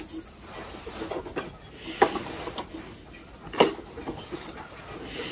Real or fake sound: real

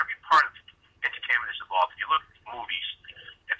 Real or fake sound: fake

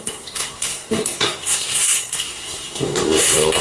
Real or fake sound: fake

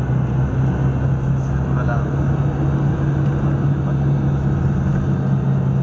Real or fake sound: real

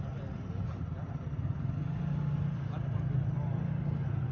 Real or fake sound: real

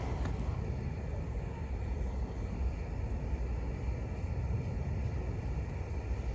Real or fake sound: real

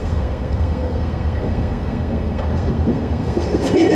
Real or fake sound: fake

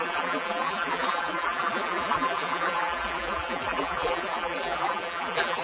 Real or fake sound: fake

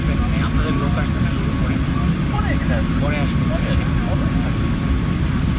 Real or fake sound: real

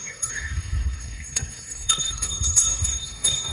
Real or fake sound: fake